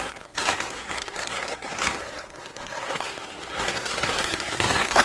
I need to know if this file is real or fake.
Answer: fake